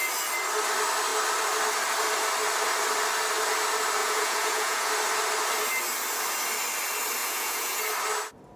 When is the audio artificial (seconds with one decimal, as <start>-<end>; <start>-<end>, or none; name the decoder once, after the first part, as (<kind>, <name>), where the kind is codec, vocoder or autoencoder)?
4.0-4.9 (vocoder, Vocos); 7.2-7.8